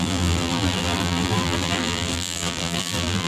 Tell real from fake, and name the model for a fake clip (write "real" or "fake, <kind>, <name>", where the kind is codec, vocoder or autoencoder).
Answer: fake, vocoder, BigVGAN v2